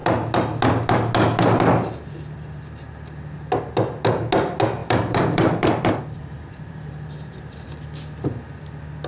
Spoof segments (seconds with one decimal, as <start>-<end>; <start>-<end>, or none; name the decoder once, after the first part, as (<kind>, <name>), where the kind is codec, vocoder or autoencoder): 4.8-7.8 (vocoder, BigVGAN v2)

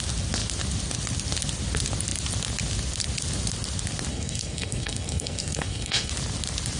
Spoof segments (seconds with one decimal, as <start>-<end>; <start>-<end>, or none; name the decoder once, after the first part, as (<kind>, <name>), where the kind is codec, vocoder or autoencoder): 4.1-6.1 (codec, SNAC)

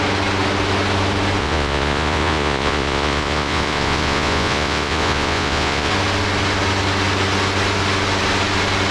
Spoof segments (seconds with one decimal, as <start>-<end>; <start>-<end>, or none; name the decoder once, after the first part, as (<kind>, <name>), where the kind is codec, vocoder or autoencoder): 1.4-5.9 (vocoder, Vocos)

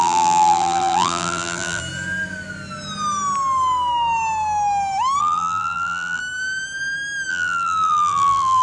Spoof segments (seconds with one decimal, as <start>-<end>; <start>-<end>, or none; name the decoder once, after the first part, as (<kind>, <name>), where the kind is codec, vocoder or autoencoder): 0.0-1.8 (vocoder, BigVGAN v2); 5.2-6.2; 7.3-8.6

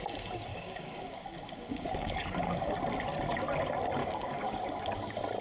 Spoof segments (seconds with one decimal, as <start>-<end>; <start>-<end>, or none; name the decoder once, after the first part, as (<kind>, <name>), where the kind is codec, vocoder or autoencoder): 0.5-2.6 (codec, DAC); 4.0-4.6

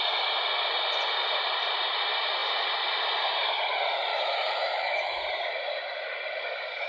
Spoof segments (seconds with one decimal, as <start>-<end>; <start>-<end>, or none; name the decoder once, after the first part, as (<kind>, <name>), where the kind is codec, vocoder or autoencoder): 4.1-5.2 (autoencoder, DAC-VAE)

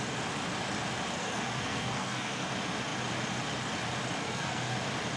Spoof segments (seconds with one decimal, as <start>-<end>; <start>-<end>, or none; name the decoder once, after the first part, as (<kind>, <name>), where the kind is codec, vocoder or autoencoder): 1.2-2.5 (codec, SNAC); 4.2-4.8